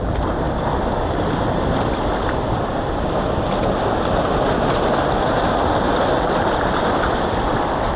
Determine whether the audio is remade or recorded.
recorded